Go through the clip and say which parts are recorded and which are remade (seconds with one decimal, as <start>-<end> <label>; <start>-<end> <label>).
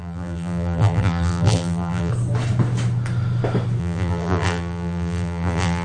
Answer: 0.0-2.1 remade; 2.1-3.8 recorded; 3.8-5.8 remade